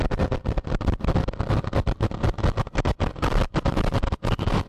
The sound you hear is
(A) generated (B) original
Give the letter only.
A